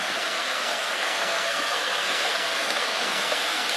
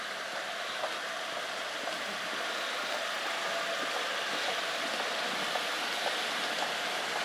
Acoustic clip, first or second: second